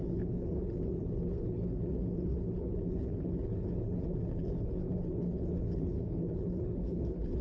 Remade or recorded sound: remade